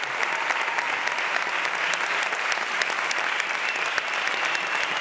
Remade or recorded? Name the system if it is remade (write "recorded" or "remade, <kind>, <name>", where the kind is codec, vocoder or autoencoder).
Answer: recorded